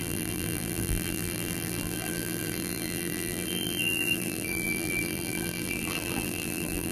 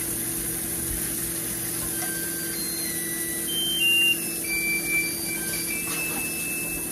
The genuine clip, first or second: second